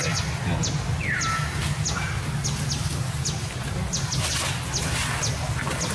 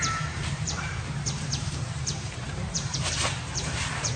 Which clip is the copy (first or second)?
second